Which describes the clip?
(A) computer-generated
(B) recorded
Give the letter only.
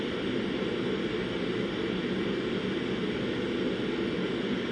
B